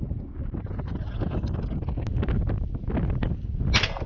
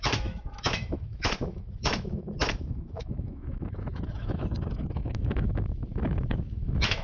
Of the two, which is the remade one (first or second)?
second